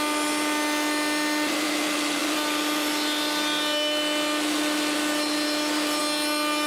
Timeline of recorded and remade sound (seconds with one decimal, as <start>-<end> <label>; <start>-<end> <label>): 0.0-6.7 recorded